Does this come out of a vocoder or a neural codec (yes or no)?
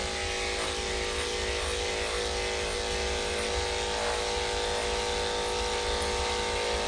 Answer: no